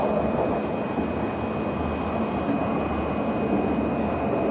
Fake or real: real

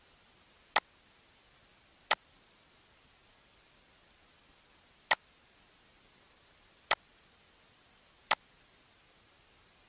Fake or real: real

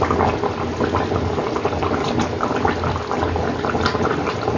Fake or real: real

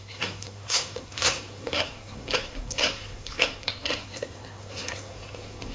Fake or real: fake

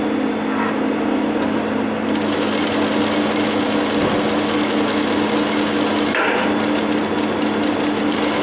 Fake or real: real